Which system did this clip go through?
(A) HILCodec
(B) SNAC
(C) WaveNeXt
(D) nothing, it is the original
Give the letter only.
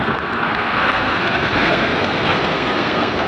B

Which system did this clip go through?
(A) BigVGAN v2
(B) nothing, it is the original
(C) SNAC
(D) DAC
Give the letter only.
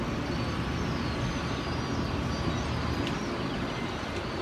B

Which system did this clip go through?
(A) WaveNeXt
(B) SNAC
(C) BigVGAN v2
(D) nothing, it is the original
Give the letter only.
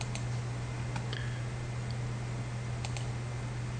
D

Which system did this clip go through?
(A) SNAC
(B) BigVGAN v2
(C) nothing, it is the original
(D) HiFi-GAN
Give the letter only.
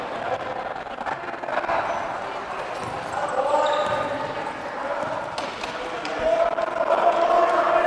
C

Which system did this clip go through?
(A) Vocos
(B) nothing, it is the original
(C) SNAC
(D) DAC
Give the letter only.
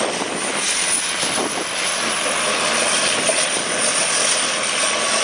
B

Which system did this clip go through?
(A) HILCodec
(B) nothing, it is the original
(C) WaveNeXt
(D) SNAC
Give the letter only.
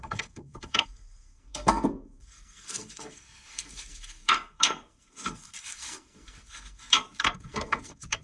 D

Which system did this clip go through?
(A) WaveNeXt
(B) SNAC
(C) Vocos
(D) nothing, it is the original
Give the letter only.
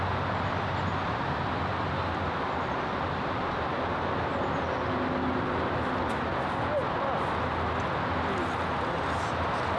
D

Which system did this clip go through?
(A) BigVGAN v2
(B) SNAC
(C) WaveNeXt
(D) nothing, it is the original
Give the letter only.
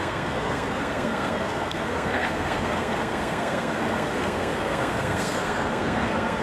B